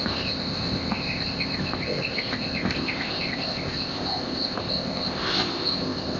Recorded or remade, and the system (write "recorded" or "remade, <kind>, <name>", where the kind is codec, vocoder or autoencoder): remade, codec, ZipCodec